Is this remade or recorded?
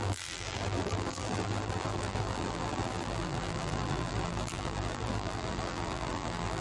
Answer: remade